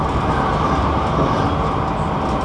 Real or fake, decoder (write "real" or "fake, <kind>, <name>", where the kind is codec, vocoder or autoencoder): real